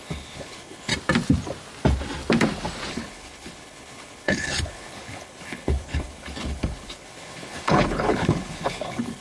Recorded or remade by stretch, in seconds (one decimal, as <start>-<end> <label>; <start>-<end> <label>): 0.0-0.9 remade; 0.9-2.9 recorded; 2.9-9.2 remade